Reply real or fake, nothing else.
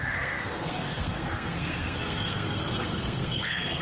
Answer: fake